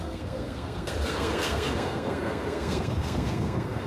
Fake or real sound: fake